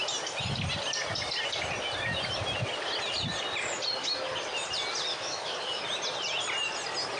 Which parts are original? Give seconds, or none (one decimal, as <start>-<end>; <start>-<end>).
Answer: 0.0-5.1; 5.8-7.2